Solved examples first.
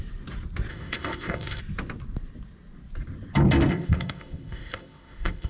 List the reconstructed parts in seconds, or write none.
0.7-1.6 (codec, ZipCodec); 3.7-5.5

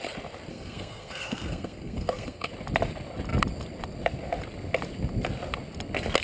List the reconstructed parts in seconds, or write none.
0.5-2.5 (codec, SNAC)

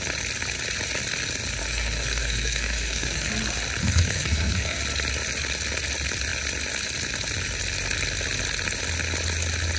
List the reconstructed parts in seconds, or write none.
1.6-3.3 (codec, SNAC); 3.8-4.8

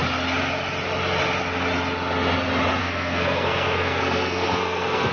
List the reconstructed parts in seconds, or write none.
2.8-5.1 (codec, SNAC)

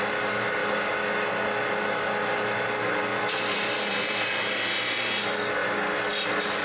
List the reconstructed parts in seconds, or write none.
3.1-4.3 (vocoder, BigVGAN v2)

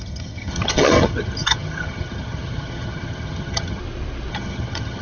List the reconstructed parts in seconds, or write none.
0.0-3.8 (vocoder, HiFi-GAN); 4.3-5.0